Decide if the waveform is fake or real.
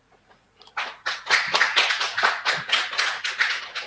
fake